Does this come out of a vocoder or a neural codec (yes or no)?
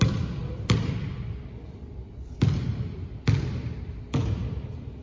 no